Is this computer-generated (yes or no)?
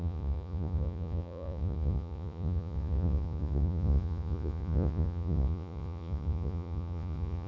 yes